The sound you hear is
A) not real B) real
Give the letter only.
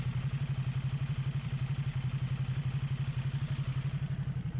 B